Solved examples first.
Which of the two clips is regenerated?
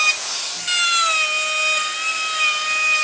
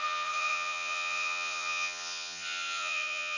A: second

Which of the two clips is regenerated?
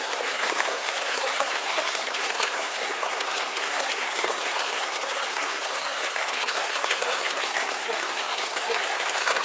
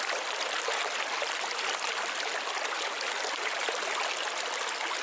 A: first